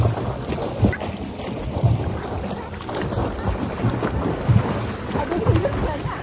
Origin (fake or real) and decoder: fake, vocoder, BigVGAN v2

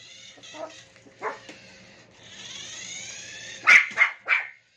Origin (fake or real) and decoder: real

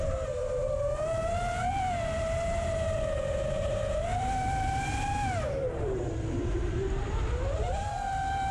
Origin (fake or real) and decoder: fake, vocoder, BigVGAN v2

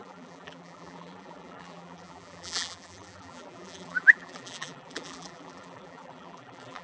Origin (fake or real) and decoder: fake, vocoder, BigVGAN v2